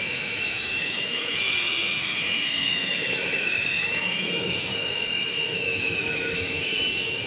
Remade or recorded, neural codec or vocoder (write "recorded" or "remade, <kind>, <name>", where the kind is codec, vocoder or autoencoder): remade, autoencoder, DAC-VAE